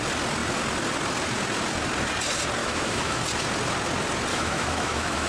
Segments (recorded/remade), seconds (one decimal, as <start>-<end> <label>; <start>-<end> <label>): 0.0-2.6 recorded; 2.6-3.2 remade; 3.2-4.3 recorded; 4.3-5.3 remade